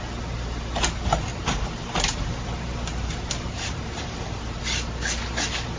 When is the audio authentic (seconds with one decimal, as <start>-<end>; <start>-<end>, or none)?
0.0-1.3; 4.6-5.8